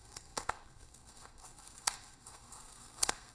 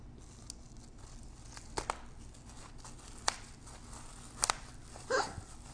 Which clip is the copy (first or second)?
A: first